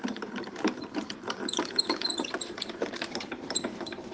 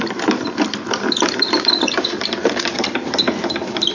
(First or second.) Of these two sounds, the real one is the second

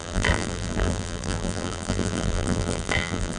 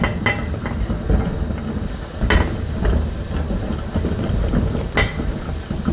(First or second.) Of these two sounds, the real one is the second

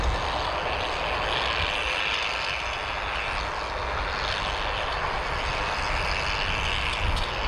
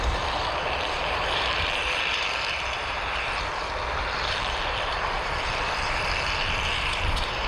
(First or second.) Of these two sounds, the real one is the first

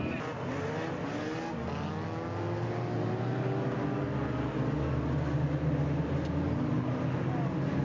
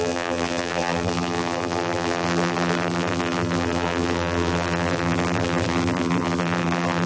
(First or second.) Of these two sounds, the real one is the first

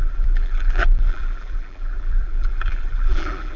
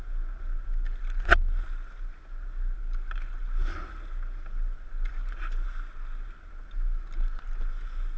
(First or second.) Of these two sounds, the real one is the second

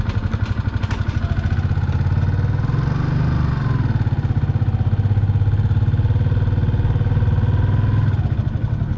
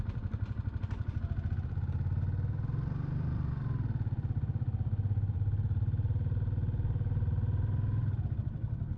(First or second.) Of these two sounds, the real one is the first